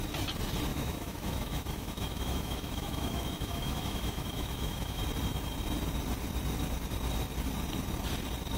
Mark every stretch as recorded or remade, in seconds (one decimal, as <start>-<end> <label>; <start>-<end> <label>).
0.0-0.7 recorded; 0.7-5.0 remade; 5.0-8.6 recorded

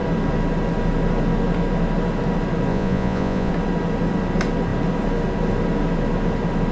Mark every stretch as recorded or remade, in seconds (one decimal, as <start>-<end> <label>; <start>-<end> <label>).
0.0-2.7 recorded; 2.7-3.5 remade; 3.5-6.7 recorded

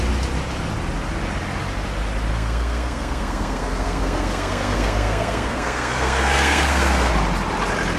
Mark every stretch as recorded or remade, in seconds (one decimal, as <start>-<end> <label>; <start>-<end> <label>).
0.0-2.3 recorded; 2.3-7.1 remade; 7.1-8.0 recorded

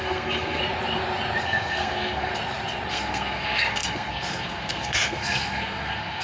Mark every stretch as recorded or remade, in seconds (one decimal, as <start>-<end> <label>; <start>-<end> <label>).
0.0-0.6 remade; 0.6-1.4 recorded; 1.4-2.3 remade; 2.3-2.9 recorded; 2.9-6.2 remade

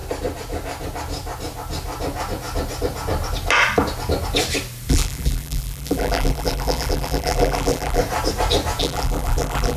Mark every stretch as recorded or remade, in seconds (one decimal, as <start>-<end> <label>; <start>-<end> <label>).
0.0-4.9 recorded; 4.9-8.0 remade; 8.0-8.8 recorded; 8.8-9.8 remade

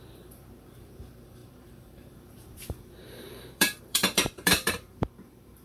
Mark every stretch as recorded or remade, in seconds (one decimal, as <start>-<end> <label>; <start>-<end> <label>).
0.0-5.6 remade